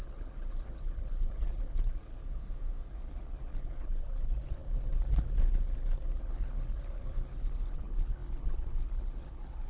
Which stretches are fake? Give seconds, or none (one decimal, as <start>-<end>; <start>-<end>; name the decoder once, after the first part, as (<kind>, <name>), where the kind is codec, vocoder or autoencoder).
0.0-2.2 (codec, HILCodec); 2.9-9.7